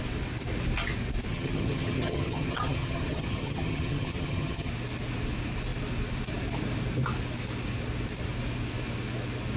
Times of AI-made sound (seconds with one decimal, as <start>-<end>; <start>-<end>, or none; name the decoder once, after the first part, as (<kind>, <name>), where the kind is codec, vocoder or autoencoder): 1.3-4.7 (vocoder, HiFi-GAN)